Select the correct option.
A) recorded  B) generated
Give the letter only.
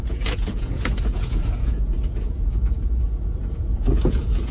B